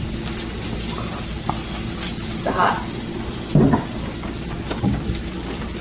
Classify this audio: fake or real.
real